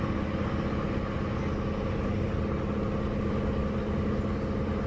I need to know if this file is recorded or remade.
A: recorded